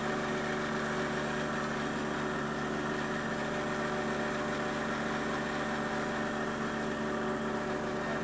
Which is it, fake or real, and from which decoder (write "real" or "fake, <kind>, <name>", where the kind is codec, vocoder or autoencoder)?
real